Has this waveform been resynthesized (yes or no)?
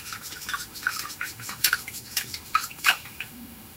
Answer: yes